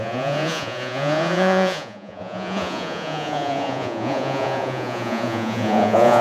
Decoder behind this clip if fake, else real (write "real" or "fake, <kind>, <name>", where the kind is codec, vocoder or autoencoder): fake, vocoder, Vocos